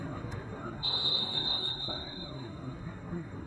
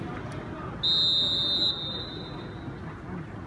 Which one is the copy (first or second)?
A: first